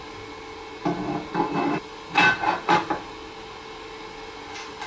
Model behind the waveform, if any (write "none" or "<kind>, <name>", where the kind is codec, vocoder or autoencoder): none